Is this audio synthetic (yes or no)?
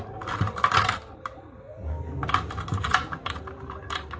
no